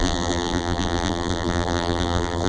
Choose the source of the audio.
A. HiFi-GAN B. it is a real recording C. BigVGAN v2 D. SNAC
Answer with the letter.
C